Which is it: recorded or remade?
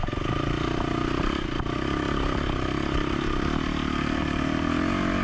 recorded